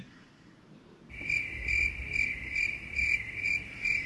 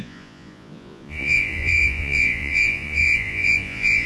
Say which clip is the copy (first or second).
second